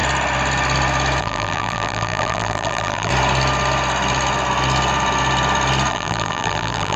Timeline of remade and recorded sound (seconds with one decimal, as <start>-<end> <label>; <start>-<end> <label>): 0.0-1.2 recorded; 1.2-3.1 remade; 3.1-5.9 recorded; 5.9-7.0 remade